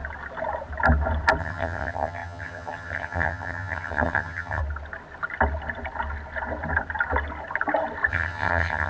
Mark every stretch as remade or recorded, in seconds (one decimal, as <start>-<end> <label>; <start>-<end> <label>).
0.0-1.4 recorded; 1.4-4.6 remade; 4.6-8.1 recorded; 8.1-8.9 remade